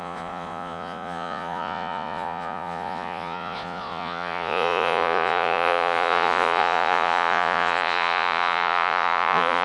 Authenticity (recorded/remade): remade